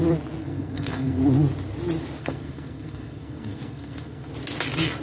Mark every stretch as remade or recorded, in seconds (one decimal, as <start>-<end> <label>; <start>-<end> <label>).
0.0-0.4 recorded; 0.4-1.2 remade; 1.2-2.2 recorded; 2.2-4.3 remade; 4.3-5.0 recorded